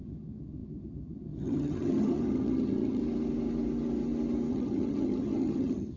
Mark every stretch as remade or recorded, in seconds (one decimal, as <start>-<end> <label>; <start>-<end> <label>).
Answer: 0.0-3.0 remade; 3.0-4.5 recorded; 4.5-6.0 remade